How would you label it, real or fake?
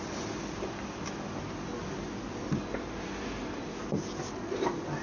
real